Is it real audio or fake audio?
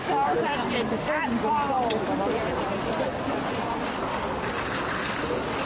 real